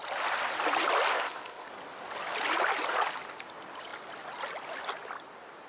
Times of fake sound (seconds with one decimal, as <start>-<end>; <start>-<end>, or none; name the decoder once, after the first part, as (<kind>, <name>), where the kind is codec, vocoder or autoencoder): 1.1-1.7 (codec, ZipCodec)